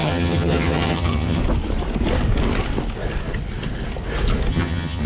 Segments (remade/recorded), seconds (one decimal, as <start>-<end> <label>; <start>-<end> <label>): 0.0-1.4 remade; 1.4-4.5 recorded; 4.5-5.1 remade